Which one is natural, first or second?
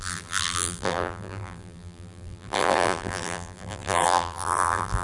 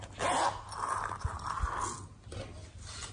second